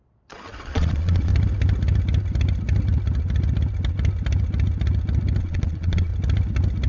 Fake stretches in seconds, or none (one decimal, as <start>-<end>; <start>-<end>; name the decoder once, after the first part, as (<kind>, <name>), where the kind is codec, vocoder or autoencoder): 0.0-1.3 (vocoder, Vocos); 5.4-6.1